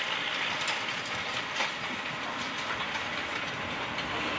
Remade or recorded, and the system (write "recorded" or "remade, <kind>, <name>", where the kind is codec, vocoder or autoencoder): recorded